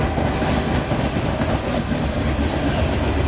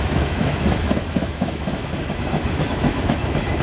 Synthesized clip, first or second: second